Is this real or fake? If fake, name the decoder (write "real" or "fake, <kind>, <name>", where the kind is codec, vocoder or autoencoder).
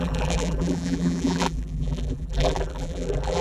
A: fake, vocoder, BigVGAN v2